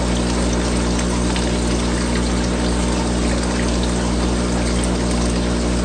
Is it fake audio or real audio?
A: real